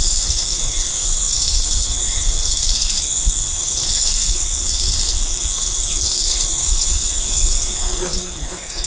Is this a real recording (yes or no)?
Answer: no